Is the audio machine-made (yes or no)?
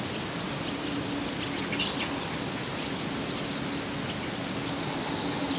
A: no